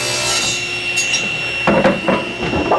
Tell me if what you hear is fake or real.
real